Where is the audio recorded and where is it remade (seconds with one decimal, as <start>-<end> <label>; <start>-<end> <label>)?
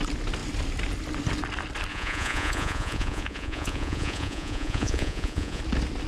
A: 0.0-1.9 recorded; 1.9-5.6 remade; 5.6-6.1 recorded